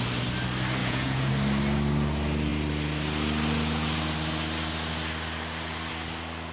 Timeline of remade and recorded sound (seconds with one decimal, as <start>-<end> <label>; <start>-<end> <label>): 0.0-0.8 recorded; 0.8-1.3 remade; 1.3-6.5 recorded